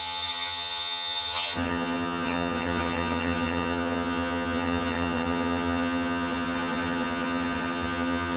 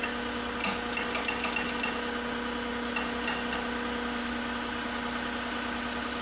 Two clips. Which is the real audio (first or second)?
second